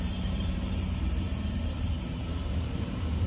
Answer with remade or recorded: remade